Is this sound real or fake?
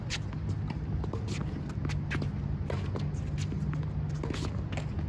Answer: real